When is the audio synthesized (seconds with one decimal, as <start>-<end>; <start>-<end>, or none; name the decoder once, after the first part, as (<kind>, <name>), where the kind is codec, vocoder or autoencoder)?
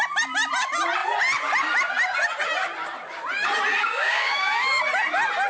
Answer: 3.8-4.8 (codec, DAC)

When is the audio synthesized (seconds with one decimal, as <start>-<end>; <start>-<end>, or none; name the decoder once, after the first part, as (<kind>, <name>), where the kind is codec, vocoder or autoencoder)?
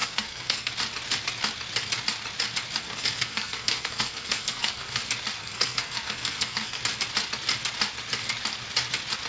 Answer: 0.0-0.7 (codec, SNAC); 2.8-5.0; 5.4-6.8